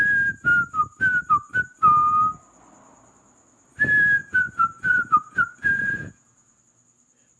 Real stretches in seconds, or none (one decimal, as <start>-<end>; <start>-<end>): 0.0-4.2; 6.6-7.4